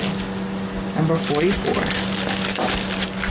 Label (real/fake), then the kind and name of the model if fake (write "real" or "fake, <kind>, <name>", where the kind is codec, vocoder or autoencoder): real